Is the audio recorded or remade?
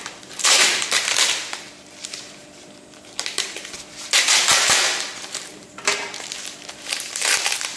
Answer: remade